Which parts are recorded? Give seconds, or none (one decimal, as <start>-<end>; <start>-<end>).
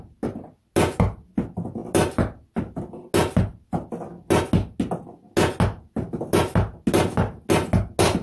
0.0-8.2